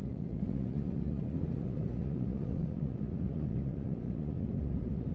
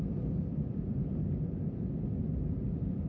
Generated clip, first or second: first